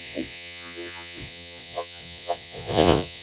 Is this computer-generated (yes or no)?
yes